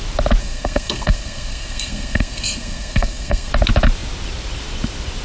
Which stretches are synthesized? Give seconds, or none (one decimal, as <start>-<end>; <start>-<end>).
0.4-3.5

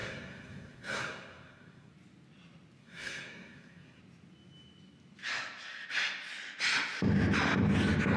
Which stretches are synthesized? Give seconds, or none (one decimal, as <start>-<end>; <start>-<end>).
0.0-1.9; 2.8-4.0

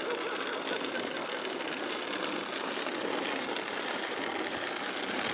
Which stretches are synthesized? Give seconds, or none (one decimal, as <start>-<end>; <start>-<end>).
none

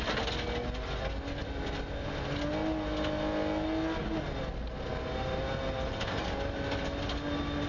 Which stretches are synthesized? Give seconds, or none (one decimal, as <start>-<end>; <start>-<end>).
none